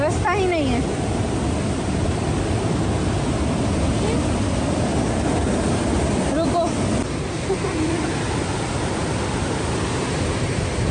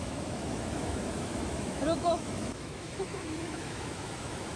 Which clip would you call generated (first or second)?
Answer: second